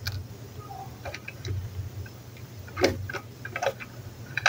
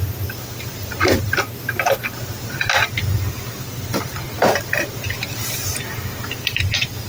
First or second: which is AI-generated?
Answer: second